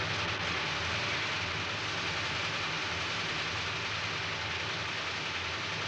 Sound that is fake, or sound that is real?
real